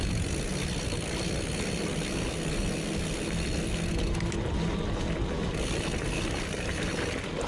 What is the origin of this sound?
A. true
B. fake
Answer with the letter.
A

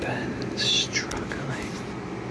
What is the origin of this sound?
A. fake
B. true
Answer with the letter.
B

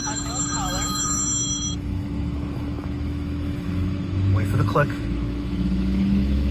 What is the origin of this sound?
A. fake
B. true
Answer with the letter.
A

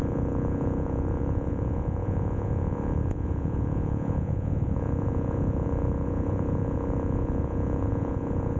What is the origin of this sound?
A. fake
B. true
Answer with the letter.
A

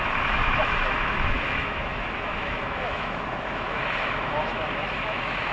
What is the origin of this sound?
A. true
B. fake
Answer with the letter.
B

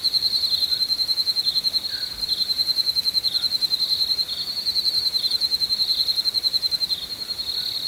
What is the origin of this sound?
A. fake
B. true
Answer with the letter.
B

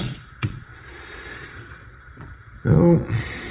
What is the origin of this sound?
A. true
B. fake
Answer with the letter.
B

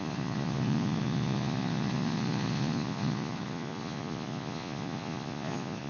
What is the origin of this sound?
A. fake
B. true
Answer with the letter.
A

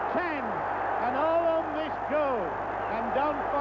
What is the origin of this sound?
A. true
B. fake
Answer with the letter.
A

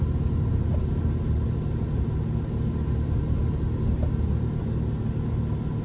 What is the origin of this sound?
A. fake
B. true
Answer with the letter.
B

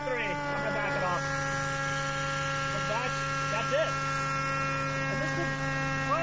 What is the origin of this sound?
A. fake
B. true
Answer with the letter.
B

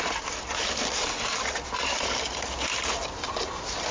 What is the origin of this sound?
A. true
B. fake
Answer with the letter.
A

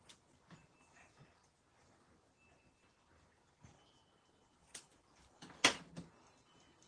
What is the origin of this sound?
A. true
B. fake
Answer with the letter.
A